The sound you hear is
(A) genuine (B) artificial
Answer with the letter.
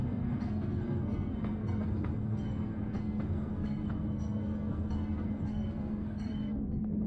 B